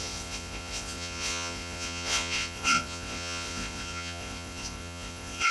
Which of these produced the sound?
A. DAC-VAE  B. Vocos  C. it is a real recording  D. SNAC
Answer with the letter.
B